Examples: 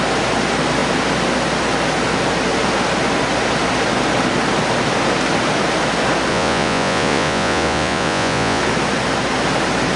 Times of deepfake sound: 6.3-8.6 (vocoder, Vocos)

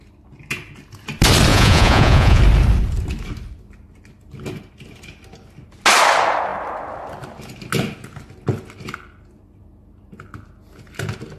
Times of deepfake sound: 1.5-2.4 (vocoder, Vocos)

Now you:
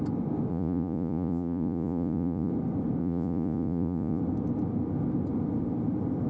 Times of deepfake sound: 0.5-2.5 (vocoder, Vocos); 3.0-4.2

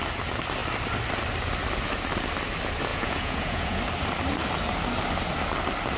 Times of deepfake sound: 2.9-3.8 (vocoder, Vocos)

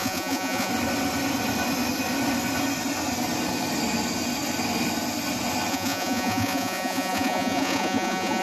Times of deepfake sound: 0.0-0.7 (vocoder, Vocos); 5.7-8.4

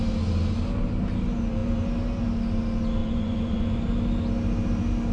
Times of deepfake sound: 3.0-3.8 (vocoder, Vocos)

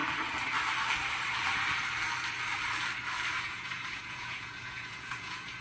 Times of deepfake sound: 3.4-5.6 (vocoder, Vocos)

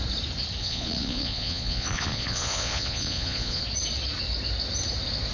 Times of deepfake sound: 0.6-3.6 (vocoder, Vocos)